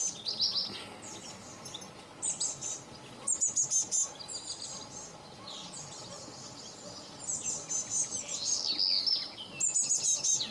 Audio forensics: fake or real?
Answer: real